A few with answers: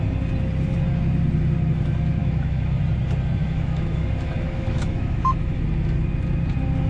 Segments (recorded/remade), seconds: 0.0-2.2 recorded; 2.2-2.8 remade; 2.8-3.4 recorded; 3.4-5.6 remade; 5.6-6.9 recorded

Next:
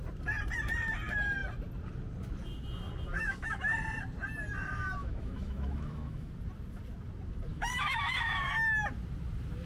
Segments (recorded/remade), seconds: 0.0-3.1 recorded; 3.1-3.7 remade; 3.7-5.0 recorded; 5.0-6.3 remade; 6.3-7.5 recorded; 7.5-8.5 remade; 8.5-9.7 recorded

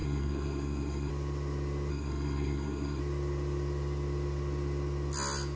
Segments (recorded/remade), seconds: 0.0-1.1 remade; 1.1-1.9 recorded; 1.9-3.0 remade; 3.0-5.6 recorded